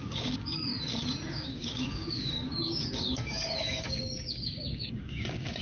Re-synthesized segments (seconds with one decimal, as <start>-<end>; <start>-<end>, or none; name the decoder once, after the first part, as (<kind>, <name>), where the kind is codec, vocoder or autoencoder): 0.0-0.7 (codec, DAC); 1.3-5.6